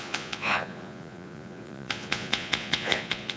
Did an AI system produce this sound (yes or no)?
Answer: yes